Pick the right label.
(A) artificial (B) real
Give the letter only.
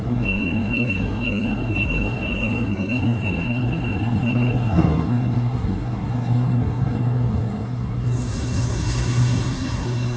A